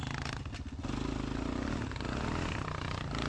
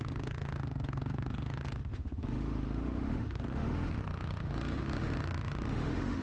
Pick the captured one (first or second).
first